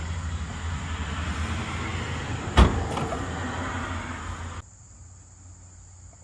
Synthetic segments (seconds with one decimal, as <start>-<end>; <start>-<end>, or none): 0.0-0.5